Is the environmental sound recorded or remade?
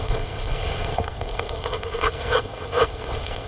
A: remade